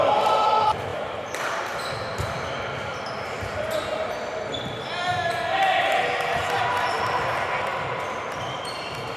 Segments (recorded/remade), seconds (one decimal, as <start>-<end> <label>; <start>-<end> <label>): 0.0-0.9 recorded; 0.9-4.4 remade; 4.4-9.2 recorded

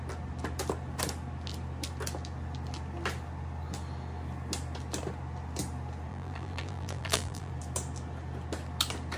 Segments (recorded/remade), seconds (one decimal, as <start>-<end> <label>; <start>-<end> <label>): 0.0-6.1 recorded; 6.1-7.5 remade; 7.5-9.2 recorded

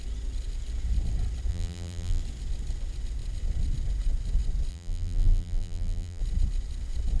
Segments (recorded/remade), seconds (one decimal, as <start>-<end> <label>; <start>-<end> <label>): 0.0-1.5 recorded; 1.5-2.2 remade; 2.2-4.7 recorded; 4.7-6.2 remade; 6.2-7.2 recorded

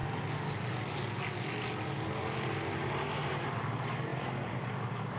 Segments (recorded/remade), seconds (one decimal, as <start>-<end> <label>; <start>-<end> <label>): 0.0-3.1 recorded; 3.1-5.2 remade

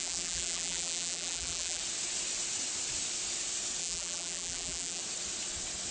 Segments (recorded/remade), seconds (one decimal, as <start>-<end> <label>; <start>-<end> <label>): 0.0-1.8 remade; 1.8-3.8 recorded; 3.8-5.0 remade; 5.0-5.9 recorded

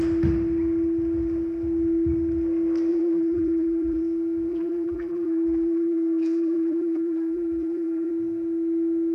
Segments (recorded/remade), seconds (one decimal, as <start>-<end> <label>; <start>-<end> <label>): 0.0-2.9 recorded; 2.9-4.0 remade; 4.0-4.5 recorded; 4.5-8.1 remade; 8.1-9.1 recorded

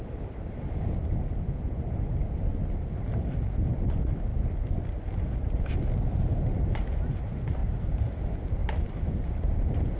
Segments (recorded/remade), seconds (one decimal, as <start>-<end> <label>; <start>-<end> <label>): 0.0-7.6 recorded; 7.6-8.2 remade; 8.2-8.6 recorded; 8.6-10.0 remade